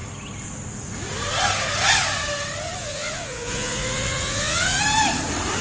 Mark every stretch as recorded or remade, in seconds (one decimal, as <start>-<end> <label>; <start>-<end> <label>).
0.0-2.8 recorded; 2.8-4.8 remade; 4.8-5.6 recorded